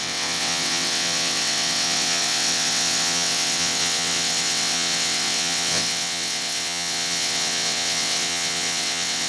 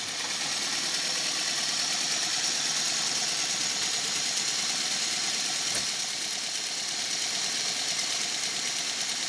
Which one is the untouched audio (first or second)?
second